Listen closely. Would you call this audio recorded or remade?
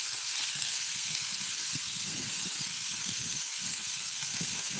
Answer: remade